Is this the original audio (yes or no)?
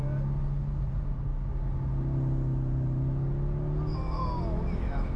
yes